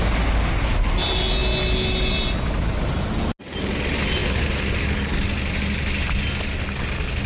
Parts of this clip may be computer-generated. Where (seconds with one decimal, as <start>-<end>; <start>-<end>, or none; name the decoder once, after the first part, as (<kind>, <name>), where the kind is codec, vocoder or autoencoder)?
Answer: none